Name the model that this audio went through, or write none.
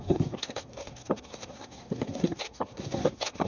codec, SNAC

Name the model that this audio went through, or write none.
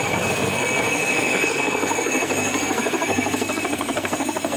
codec, SNAC